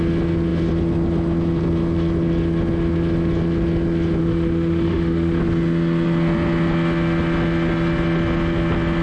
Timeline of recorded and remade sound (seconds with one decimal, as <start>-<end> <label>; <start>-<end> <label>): 0.0-4.2 recorded; 4.2-5.4 remade; 5.4-9.0 recorded